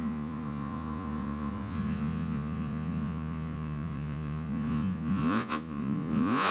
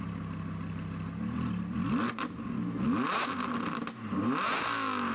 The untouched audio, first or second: second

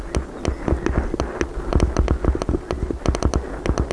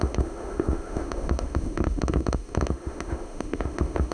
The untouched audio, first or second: first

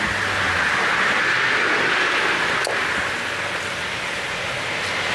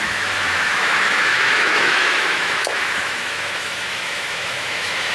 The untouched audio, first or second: first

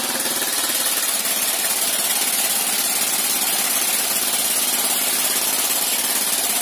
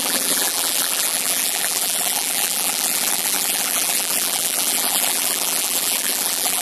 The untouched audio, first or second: first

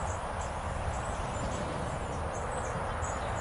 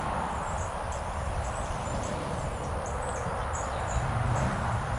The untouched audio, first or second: second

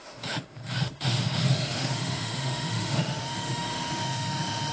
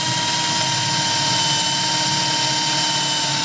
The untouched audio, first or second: second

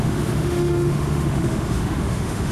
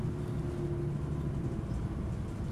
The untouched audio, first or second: second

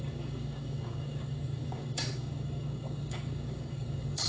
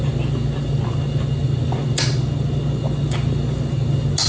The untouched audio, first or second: second